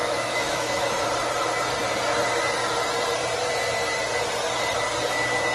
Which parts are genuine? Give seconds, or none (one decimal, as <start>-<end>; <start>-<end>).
1.1-5.5